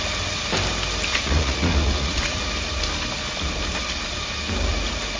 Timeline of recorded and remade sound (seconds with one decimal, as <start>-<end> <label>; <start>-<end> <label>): 0.0-1.1 recorded; 1.1-2.4 remade; 2.4-5.2 recorded